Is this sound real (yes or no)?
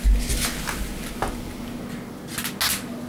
yes